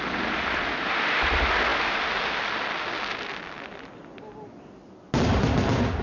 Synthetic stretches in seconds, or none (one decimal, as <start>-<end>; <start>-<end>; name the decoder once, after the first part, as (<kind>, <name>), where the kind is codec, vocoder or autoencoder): none